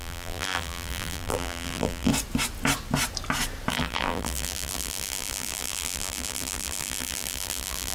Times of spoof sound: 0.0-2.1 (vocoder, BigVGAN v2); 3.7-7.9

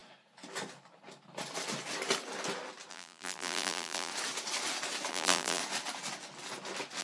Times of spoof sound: 2.9-4.1 (vocoder, BigVGAN v2); 5.1-5.6

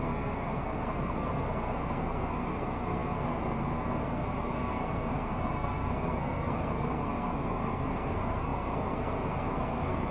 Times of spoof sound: 0.0-10.1 (codec, SNAC)

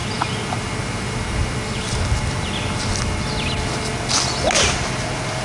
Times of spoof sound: none

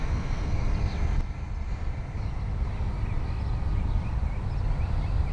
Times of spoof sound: 0.0-0.6 (codec, SNAC)

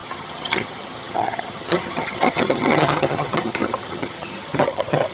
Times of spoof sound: 0.0-5.1 (vocoder, HiFi-GAN)

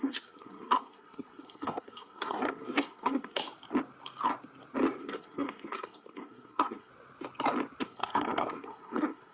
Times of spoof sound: 0.0-3.4 (codec, SNAC); 5.0-6.9; 7.8-9.3

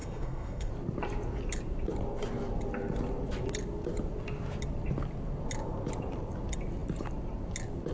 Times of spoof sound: 0.0-0.7 (codec, SNAC)